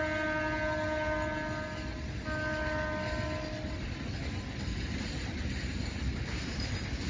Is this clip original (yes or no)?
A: yes